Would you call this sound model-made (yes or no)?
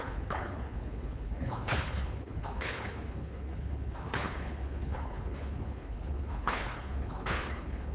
yes